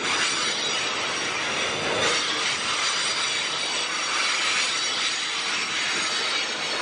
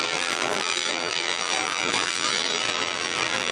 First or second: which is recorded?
first